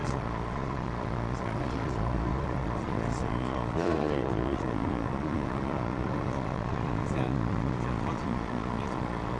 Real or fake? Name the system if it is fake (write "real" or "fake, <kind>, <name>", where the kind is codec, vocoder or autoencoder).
fake, vocoder, Vocos